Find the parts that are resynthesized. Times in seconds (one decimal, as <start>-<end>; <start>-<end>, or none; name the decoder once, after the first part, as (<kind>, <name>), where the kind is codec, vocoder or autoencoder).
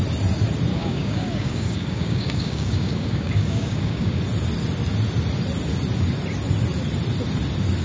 0.7-4.2 (codec, DAC)